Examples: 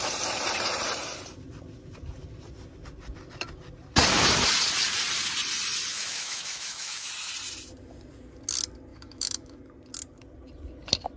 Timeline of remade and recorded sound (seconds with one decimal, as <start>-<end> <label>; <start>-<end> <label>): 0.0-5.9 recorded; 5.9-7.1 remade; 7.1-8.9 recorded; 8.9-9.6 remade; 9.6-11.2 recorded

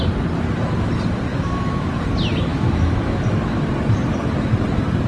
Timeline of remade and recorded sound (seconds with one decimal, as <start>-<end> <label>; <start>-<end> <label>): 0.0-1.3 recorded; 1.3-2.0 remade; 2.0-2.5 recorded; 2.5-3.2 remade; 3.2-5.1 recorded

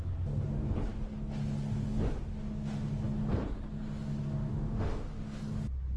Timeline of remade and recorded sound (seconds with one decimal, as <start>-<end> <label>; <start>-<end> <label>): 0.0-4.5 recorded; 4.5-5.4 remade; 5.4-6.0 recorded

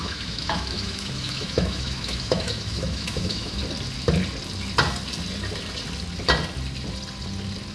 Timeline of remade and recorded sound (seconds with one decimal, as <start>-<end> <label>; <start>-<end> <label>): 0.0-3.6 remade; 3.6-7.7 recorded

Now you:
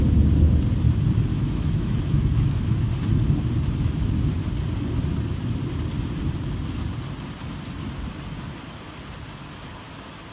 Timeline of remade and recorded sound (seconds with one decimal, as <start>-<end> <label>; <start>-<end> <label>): 0.0-1.3 recorded; 1.3-2.9 remade; 2.9-10.3 recorded

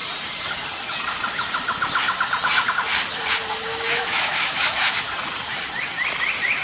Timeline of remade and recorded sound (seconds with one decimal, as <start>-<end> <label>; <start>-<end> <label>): 0.0-3.7 recorded; 3.7-4.9 remade; 4.9-6.6 recorded

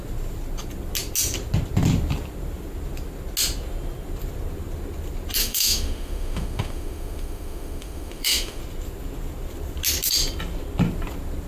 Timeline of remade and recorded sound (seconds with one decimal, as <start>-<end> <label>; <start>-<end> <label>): 0.0-5.4 recorded; 5.4-8.6 remade; 8.6-11.5 recorded

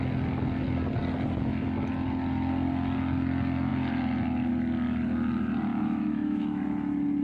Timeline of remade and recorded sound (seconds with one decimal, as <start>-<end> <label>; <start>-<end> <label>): 0.0-5.7 recorded; 5.7-6.6 remade; 6.6-7.2 recorded